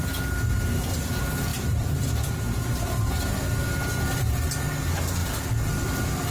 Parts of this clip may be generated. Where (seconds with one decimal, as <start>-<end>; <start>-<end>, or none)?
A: 1.5-3.1